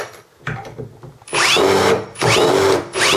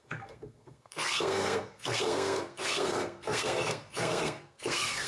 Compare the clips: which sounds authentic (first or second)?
first